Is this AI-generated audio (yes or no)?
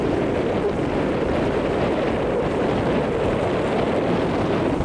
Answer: no